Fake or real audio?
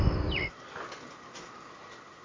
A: real